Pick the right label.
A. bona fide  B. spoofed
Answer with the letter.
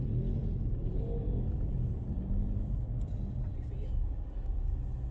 A